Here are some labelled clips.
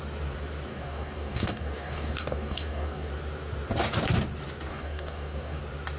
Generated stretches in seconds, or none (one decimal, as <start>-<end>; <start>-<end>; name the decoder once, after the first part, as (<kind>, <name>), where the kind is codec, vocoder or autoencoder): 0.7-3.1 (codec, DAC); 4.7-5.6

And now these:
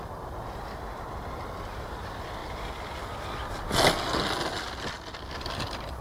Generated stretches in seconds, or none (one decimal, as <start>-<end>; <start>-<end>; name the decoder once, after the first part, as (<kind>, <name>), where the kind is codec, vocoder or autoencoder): none

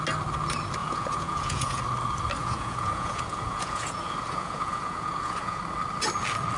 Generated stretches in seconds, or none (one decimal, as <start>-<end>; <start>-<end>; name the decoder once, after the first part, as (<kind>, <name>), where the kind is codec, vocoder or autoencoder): 0.8-1.8 (vocoder, Vocos); 2.4-5.6

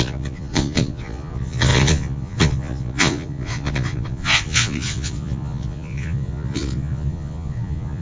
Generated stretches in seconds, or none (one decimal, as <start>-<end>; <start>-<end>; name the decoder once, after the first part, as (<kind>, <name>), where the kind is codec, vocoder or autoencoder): 0.0-8.0 (vocoder, Vocos)

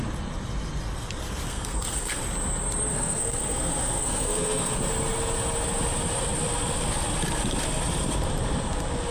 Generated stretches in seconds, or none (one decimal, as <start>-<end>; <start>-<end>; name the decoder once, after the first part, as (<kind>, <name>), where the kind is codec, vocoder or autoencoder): 1.5-2.2 (codec, SNAC); 2.9-4.8

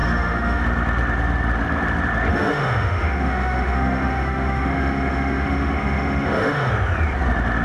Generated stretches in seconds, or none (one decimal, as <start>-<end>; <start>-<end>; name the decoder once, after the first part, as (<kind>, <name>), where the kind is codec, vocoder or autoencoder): 0.0-0.6 (autoencoder, DAC-VAE); 2.3-6.7

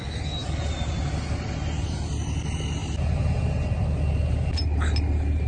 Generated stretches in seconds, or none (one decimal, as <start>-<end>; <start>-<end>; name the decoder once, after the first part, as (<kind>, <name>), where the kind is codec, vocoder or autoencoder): none

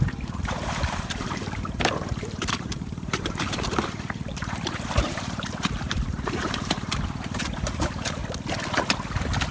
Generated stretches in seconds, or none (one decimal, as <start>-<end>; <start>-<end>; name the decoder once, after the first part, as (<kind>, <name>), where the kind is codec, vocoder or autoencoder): 0.0-8.2 (vocoder, BigVGAN v2)